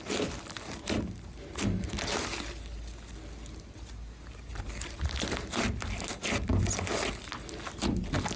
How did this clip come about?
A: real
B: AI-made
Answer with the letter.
A